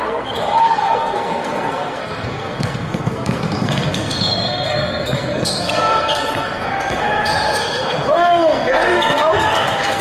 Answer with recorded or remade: remade